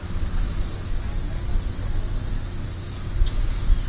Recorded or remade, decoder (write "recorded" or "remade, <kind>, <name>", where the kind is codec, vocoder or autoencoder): recorded